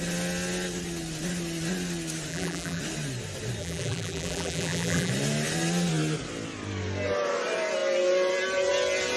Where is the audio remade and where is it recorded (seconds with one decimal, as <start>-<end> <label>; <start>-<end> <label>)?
0.0-2.3 recorded; 2.3-2.8 remade; 2.8-3.6 recorded; 3.6-5.1 remade; 5.1-9.2 recorded